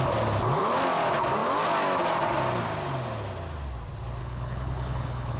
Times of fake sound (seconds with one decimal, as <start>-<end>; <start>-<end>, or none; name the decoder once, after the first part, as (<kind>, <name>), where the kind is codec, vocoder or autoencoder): 4.2-5.4 (codec, HILCodec)

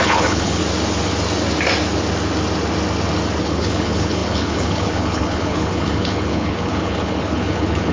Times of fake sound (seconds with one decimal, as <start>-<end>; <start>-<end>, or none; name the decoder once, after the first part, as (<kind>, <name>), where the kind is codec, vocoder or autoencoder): 0.0-0.6 (codec, HILCodec); 3.4-7.9

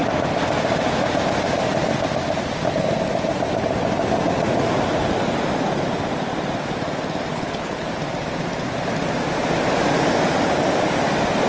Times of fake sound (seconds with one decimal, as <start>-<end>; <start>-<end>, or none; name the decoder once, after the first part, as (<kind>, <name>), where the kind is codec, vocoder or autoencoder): 7.3-7.9 (codec, HILCodec)

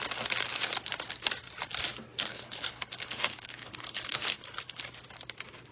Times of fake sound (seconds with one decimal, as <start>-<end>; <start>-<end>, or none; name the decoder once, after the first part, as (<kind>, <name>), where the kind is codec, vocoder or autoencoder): 2.3-4.8 (codec, HILCodec)

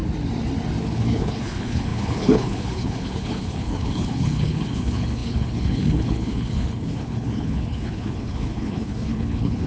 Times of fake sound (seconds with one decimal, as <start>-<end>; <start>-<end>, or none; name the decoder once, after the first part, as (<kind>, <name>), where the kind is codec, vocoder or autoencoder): 0.8-9.7 (codec, HILCodec)

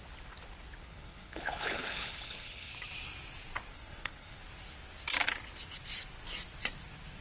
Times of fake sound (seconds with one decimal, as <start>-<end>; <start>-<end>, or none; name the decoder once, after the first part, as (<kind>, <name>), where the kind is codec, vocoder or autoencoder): 0.8-2.7 (codec, HILCodec); 3.7-4.4

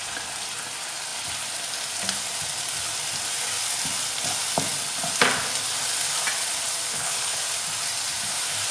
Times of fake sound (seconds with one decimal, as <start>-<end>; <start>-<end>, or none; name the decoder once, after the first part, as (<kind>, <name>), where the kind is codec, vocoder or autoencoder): 6.9-7.4 (codec, HILCodec)

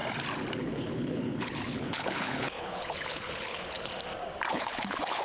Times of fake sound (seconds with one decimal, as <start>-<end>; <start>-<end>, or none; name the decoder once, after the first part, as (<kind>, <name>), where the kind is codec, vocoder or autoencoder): 0.6-3.9 (codec, HILCodec); 4.5-5.2